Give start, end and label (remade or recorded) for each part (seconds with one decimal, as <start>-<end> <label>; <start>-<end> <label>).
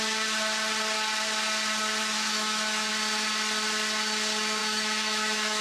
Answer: 0.0-2.0 recorded; 2.0-2.9 remade; 2.9-4.6 recorded; 4.6-5.6 remade